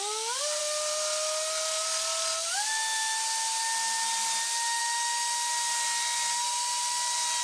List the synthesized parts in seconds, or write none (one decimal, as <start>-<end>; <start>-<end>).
none